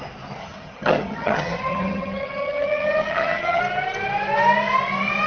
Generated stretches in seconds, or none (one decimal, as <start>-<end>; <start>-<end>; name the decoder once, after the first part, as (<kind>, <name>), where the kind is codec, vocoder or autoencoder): 0.4-3.6 (vocoder, HiFi-GAN)